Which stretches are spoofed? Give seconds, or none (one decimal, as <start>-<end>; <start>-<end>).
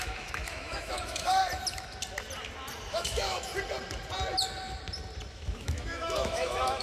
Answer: 0.0-1.4; 2.9-3.5; 5.3-6.8